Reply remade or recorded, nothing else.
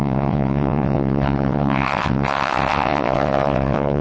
remade